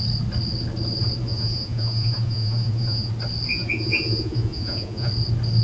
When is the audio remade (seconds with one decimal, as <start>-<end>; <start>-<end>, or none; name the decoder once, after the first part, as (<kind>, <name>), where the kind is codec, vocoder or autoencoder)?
1.2-3.1 (vocoder, Vocos); 3.5-5.1